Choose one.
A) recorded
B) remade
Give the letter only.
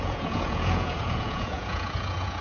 B